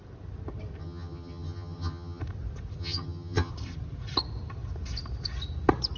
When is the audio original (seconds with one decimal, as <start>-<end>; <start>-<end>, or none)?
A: 0.0-0.8; 2.2-2.8; 3.5-6.0